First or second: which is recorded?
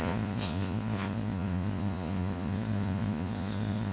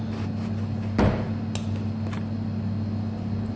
second